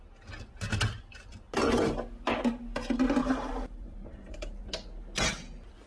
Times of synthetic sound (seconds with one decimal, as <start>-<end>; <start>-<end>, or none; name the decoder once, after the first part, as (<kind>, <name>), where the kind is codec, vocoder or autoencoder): 3.2-4.6 (vocoder, BigVGAN v2)